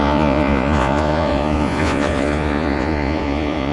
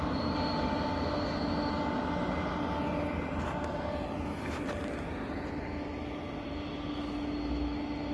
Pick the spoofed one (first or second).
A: first